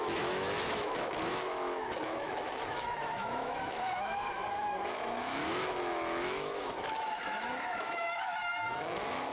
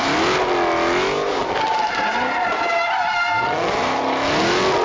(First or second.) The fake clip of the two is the first